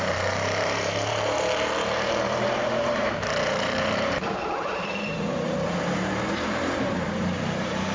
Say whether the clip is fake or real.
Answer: fake